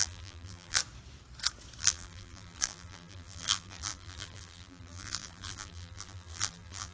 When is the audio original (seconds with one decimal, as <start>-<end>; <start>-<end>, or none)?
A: 0.8-1.8